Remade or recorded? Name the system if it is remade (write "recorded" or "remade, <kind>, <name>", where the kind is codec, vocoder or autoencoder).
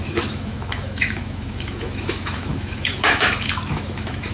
remade, autoencoder, DAC-VAE